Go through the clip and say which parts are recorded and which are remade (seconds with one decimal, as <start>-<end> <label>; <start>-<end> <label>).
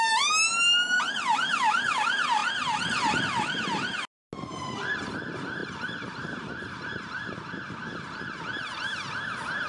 0.0-4.5 recorded; 4.5-5.1 remade; 5.1-5.6 recorded; 5.6-7.0 remade; 7.0-9.7 recorded